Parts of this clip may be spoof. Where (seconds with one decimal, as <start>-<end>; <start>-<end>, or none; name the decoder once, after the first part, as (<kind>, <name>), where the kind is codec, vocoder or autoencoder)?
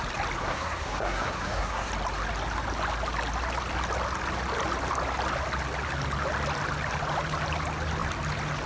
0.4-1.9 (codec, SNAC)